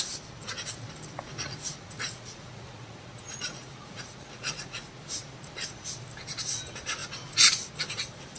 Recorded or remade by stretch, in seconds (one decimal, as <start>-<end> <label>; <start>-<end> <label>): 0.0-1.4 recorded; 1.4-4.9 remade; 4.9-8.4 recorded

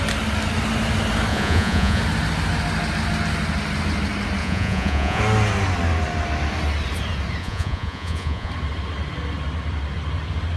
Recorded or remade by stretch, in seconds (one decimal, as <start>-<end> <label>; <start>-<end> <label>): 0.0-1.3 recorded; 1.3-2.0 remade; 2.0-4.4 recorded; 4.4-5.2 remade; 5.2-7.4 recorded; 7.4-8.5 remade; 8.5-10.6 recorded

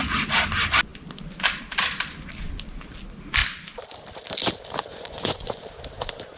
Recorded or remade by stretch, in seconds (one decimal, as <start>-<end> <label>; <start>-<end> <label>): 0.0-4.9 recorded; 4.9-5.6 remade; 5.6-6.4 recorded

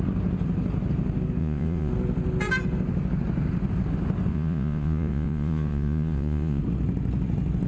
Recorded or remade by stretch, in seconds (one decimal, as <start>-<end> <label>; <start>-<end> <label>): 0.0-1.4 recorded; 1.4-1.9 remade; 1.9-4.3 recorded; 4.3-6.6 remade; 6.6-7.7 recorded

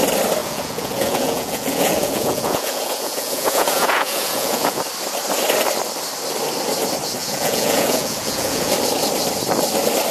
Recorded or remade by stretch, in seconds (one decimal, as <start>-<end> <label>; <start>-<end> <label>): 0.0-0.4 recorded; 0.4-4.8 remade; 4.8-7.2 recorded; 7.2-8.7 remade; 8.7-10.1 recorded

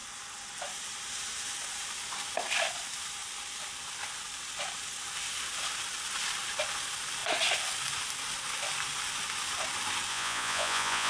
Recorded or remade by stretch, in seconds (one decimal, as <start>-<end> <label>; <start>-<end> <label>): 0.0-10.1 recorded; 10.1-11.1 remade